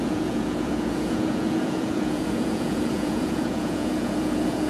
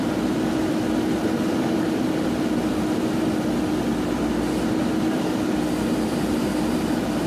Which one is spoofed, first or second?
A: first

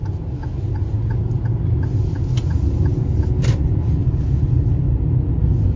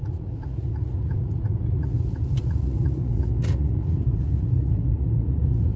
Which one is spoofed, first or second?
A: second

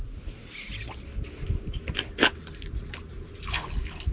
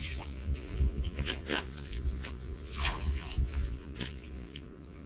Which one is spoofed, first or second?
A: second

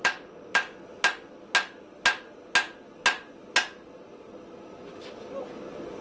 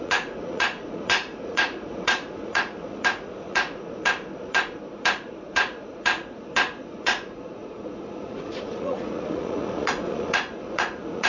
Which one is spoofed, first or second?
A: second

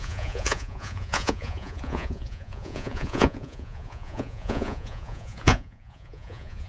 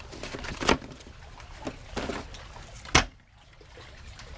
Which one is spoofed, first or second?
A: first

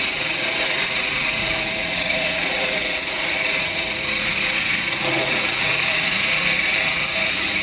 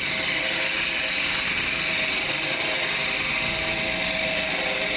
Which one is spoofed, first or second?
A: first